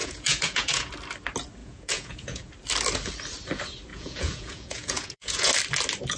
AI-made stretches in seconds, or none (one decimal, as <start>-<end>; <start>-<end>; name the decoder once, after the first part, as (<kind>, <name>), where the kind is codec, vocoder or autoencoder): 0.0-0.9 (vocoder, Vocos); 1.6-2.5; 3.9-5.5